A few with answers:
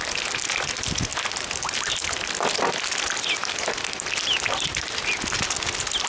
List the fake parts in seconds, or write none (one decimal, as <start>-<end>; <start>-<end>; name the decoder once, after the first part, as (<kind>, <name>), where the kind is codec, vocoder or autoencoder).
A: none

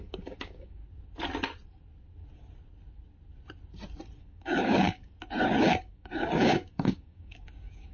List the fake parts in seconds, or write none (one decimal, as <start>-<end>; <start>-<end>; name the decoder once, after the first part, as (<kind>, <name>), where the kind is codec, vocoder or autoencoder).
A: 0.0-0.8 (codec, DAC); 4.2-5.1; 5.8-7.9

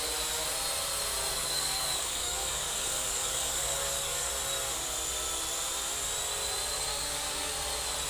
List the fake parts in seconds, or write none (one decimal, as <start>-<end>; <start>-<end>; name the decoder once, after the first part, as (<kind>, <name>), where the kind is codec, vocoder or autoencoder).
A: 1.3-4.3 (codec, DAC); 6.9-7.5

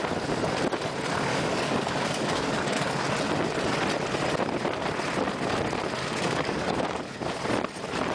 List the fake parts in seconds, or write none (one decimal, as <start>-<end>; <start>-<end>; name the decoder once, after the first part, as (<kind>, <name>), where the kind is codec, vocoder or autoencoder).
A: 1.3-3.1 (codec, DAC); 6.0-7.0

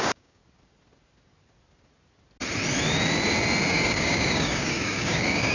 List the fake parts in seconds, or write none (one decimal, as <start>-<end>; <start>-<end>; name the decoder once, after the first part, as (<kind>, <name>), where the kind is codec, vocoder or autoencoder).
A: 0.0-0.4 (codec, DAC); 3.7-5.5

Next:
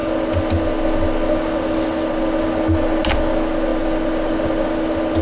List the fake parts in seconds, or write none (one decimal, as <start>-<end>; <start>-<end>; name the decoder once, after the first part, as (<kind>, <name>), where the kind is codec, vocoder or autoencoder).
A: none

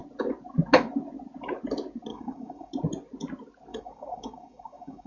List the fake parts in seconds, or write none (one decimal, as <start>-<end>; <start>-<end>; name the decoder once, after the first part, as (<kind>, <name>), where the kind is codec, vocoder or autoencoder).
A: 2.1-2.7 (codec, DAC); 3.7-5.1